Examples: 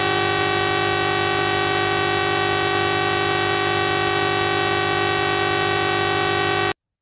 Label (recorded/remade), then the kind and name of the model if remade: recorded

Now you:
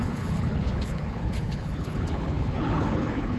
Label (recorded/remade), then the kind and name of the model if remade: remade, codec, HILCodec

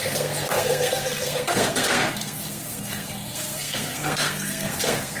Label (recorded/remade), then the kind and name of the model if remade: remade, codec, SNAC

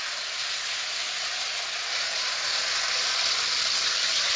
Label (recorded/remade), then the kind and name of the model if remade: recorded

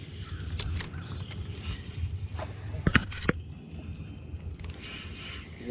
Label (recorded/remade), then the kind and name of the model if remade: recorded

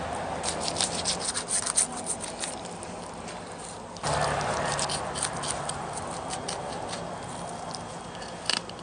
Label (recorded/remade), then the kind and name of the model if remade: recorded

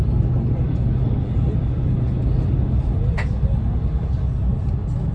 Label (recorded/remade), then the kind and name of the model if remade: recorded